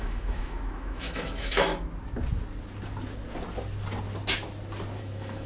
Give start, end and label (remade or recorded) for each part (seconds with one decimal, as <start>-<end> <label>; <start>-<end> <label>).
0.0-1.7 remade; 1.7-5.0 recorded; 5.0-5.5 remade